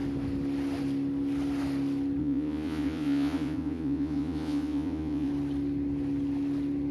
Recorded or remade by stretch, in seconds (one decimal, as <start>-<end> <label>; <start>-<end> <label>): 0.0-2.2 recorded; 2.2-5.3 remade; 5.3-6.9 recorded